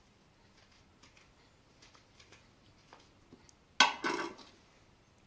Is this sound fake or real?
real